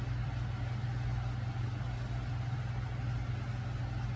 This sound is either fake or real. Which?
real